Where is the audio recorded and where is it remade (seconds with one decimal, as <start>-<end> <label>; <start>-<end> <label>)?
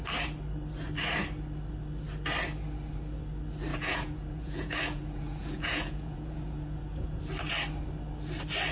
0.0-3.7 recorded; 3.7-7.2 remade; 7.2-8.7 recorded